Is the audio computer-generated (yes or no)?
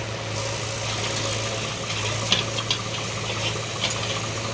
no